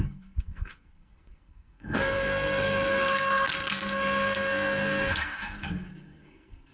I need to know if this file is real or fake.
fake